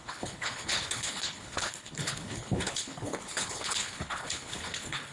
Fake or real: fake